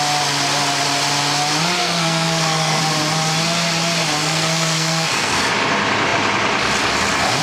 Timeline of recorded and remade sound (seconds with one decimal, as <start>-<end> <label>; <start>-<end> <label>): 0.0-1.8 recorded; 1.8-2.8 remade; 2.8-4.2 recorded; 4.2-5.5 remade; 5.5-7.4 recorded